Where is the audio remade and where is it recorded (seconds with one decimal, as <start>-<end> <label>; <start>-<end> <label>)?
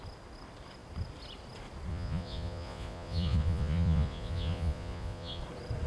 0.0-1.9 recorded; 1.9-5.4 remade; 5.4-5.9 recorded